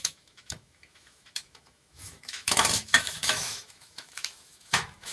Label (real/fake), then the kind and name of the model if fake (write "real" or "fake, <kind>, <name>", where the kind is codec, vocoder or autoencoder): fake, autoencoder, DAC-VAE